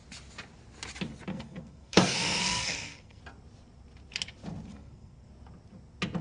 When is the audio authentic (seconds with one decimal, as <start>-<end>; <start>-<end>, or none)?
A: 0.0-1.3; 3.2-4.7; 5.3-6.2